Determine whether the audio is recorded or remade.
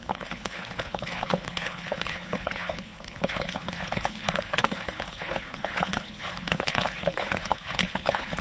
remade